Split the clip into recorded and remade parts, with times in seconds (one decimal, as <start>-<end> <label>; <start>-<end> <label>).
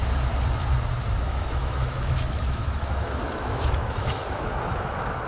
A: 0.0-1.0 recorded; 1.0-5.3 remade